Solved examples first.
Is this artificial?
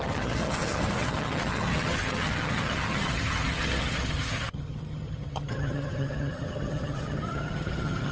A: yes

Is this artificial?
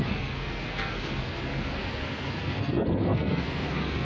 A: yes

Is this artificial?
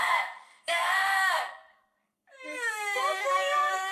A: yes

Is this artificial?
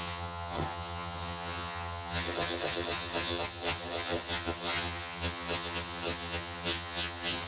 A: yes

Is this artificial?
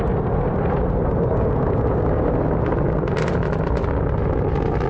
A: no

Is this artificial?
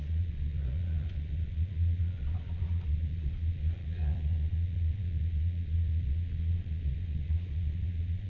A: yes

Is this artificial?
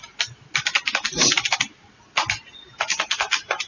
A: no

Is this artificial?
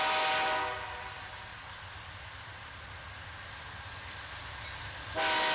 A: no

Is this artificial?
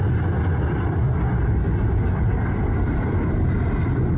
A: no